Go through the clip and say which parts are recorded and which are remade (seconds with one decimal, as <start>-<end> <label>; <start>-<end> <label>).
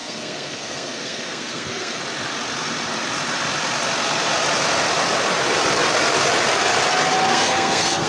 0.0-2.0 remade; 2.0-7.3 recorded; 7.3-8.1 remade